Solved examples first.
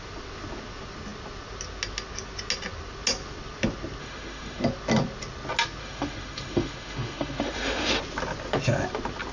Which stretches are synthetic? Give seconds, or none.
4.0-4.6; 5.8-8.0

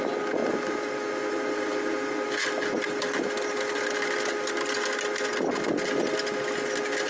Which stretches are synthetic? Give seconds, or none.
none

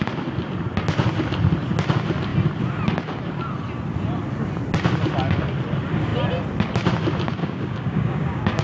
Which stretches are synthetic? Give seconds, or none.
7.4-8.6

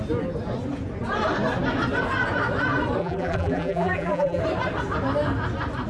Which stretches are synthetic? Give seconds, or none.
3.0-4.4

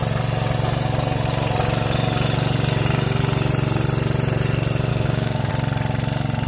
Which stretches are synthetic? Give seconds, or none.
4.9-5.5

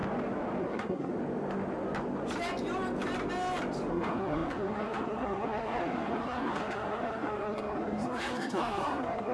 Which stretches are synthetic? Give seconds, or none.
0.6-1.1; 3.9-9.3